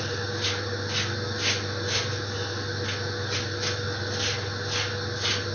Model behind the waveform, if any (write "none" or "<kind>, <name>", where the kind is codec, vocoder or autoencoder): none